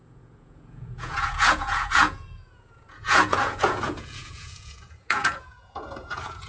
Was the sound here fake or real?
fake